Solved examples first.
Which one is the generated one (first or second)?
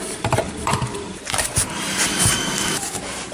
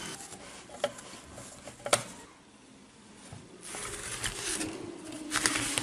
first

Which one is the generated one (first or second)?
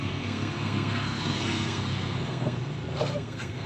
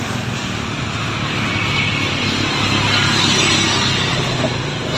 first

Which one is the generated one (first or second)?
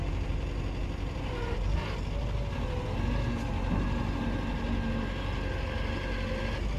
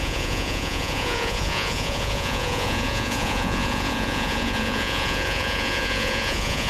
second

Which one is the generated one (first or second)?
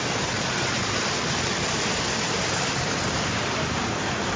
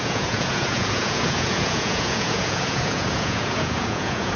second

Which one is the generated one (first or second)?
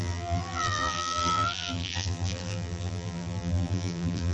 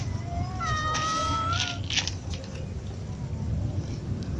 first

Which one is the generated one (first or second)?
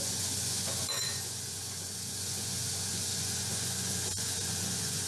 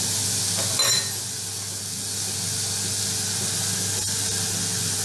first